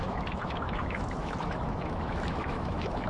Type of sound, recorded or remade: remade